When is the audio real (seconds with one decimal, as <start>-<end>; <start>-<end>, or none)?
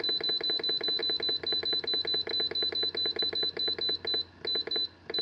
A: 0.0-5.2